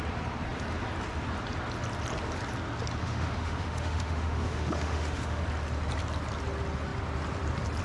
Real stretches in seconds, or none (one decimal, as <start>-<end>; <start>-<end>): 0.0-3.0; 5.4-7.8